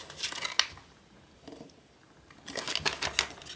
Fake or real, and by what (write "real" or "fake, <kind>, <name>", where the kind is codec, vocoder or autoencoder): real